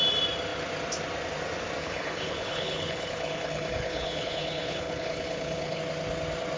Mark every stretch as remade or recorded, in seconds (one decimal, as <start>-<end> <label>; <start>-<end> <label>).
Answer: 0.0-1.8 recorded; 1.8-5.8 remade; 5.8-6.6 recorded